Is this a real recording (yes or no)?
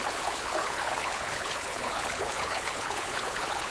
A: no